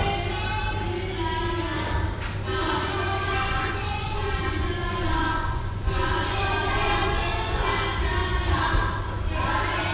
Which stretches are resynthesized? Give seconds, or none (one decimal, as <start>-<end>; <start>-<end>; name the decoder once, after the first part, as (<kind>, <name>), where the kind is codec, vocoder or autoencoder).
2.6-7.7 (vocoder, Vocos); 8.2-8.7